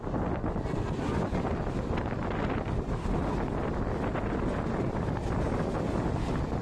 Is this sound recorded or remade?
recorded